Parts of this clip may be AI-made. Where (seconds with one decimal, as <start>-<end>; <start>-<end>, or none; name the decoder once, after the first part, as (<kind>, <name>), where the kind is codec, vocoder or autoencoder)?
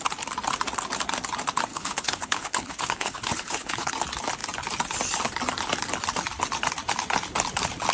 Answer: 1.7-3.9 (codec, HILCodec)